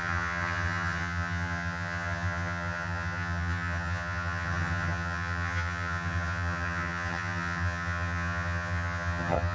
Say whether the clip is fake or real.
fake